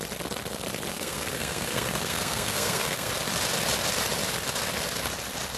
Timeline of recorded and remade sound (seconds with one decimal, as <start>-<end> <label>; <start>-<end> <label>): 0.0-0.9 recorded; 0.9-3.1 remade; 3.1-5.6 recorded

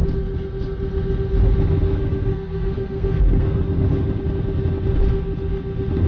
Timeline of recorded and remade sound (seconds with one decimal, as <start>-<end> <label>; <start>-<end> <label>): 0.0-1.9 recorded; 1.9-3.6 remade; 3.6-6.1 recorded

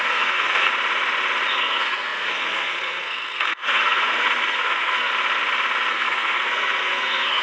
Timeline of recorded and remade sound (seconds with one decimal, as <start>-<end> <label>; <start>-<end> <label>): 0.0-0.7 remade; 0.7-1.5 recorded; 1.5-5.1 remade; 5.1-5.9 recorded; 5.9-7.4 remade

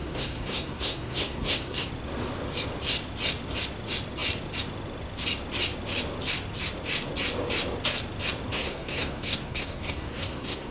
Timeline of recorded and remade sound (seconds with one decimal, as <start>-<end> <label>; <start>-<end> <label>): 0.0-1.9 remade; 1.9-8.5 recorded; 8.5-10.7 remade